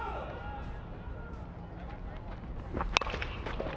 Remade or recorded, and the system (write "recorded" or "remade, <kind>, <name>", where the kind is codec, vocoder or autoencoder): recorded